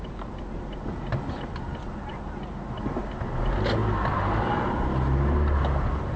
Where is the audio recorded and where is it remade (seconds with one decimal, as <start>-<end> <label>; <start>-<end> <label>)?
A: 0.0-6.2 recorded